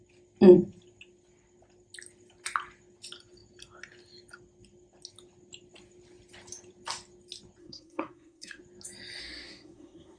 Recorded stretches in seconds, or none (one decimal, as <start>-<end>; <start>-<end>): 0.0-7.6; 8.6-9.2